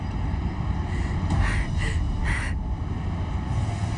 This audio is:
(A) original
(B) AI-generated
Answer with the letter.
A